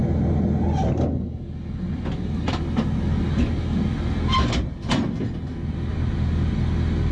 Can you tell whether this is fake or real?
real